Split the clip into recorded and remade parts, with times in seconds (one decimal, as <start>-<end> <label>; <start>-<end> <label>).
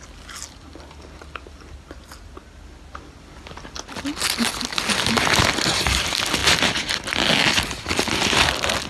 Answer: 0.0-8.9 recorded